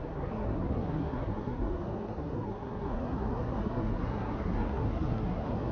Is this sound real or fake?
fake